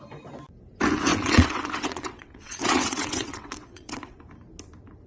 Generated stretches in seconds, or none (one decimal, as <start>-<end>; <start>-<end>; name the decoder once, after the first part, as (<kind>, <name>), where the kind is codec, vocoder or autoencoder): 1.1-4.2 (vocoder, WaveNeXt)